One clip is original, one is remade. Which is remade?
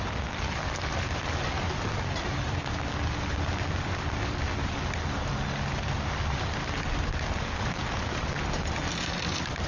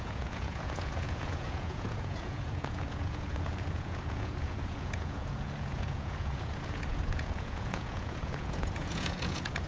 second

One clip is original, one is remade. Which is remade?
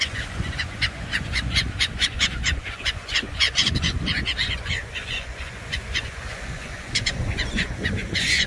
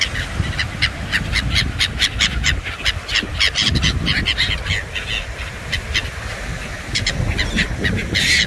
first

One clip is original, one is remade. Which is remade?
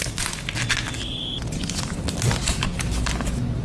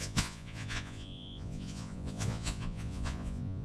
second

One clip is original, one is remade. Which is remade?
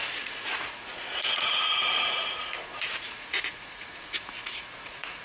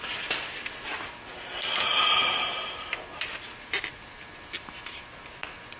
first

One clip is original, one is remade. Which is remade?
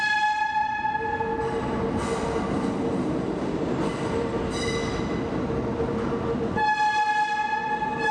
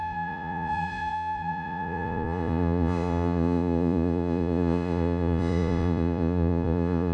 second